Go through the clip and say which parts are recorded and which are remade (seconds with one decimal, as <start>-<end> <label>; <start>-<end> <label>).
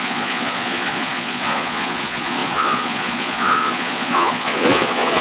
0.0-5.2 remade